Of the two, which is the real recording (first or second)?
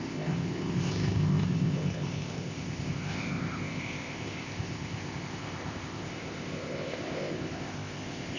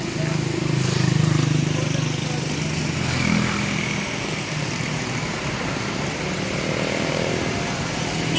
second